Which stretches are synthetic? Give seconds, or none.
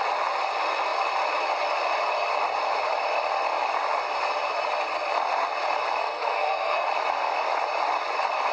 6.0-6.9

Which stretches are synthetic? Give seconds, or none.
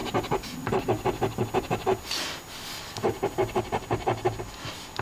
none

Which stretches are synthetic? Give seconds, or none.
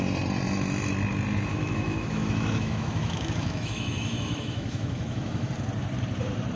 1.5-5.5